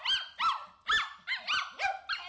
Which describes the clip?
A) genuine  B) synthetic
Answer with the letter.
A